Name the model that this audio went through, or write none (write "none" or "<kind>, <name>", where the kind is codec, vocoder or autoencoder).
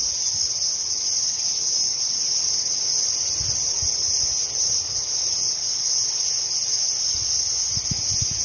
none